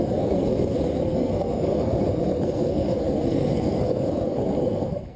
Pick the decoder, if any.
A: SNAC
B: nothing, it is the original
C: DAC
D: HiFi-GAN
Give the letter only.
A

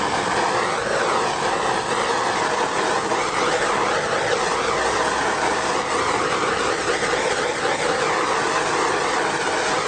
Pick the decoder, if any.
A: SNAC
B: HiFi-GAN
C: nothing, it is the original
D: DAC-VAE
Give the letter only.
C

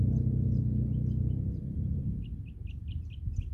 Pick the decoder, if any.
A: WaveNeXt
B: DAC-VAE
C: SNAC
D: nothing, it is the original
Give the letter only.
D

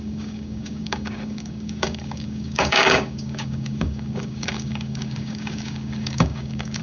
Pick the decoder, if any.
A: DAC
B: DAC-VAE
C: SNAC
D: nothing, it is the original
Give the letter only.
A